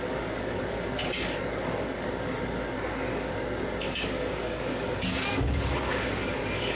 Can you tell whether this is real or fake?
fake